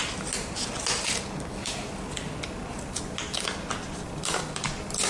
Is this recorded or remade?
recorded